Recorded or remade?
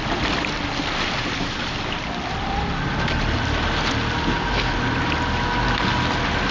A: recorded